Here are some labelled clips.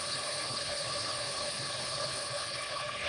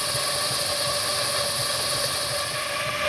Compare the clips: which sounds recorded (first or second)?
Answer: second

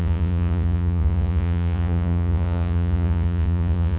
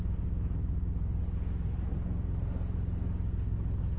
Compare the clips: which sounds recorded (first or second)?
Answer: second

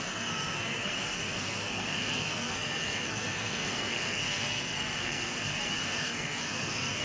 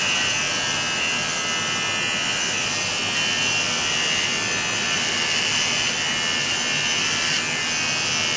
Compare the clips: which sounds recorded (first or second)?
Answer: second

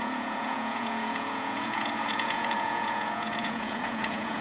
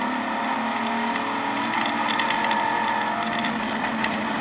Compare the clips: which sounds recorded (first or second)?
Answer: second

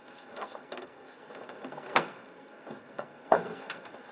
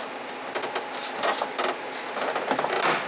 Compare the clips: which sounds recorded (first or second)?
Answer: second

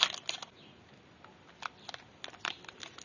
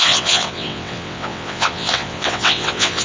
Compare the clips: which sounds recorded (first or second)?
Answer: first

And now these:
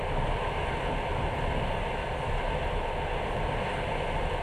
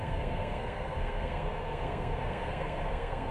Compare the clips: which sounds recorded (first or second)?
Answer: first